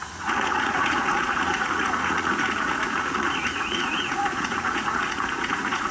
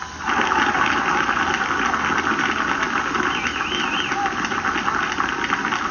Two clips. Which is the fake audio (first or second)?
first